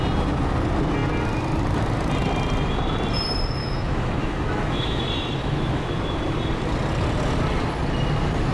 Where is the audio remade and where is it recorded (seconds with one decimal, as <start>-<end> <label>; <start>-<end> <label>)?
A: 0.0-3.6 recorded; 3.6-5.0 remade; 5.0-5.4 recorded; 5.4-6.2 remade; 6.2-8.5 recorded